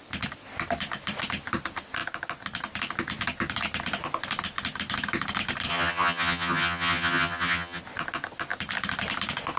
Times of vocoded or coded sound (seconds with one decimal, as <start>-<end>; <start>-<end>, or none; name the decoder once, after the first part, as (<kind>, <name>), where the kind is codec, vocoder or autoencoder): 5.7-7.8 (vocoder, HiFi-GAN)